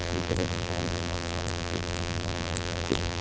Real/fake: fake